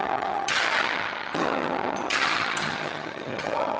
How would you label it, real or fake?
fake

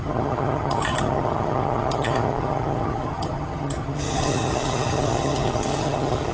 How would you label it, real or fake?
fake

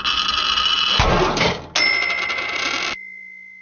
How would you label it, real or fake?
real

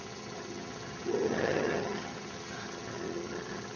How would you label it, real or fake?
fake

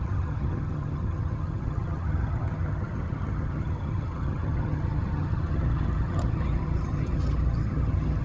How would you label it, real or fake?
fake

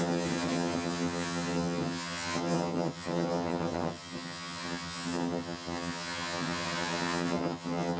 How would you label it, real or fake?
fake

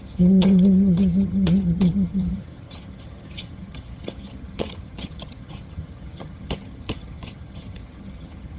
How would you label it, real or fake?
fake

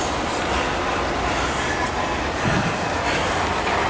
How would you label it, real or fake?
real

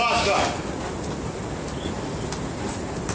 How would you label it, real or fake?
real